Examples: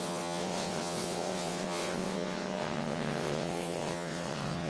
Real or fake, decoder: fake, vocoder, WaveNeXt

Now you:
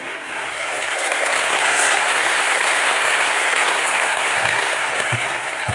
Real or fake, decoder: fake, codec, SNAC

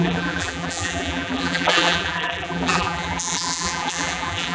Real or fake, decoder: fake, vocoder, BigVGAN v2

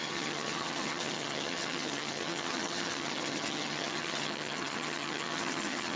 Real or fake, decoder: fake, vocoder, HiFi-GAN